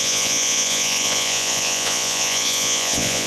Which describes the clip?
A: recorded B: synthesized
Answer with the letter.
B